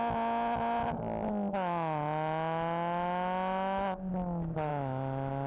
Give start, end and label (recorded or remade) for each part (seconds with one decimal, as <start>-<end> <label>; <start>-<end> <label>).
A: 0.0-5.5 recorded